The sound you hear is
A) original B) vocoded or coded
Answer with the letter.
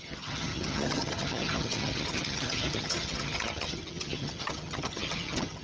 B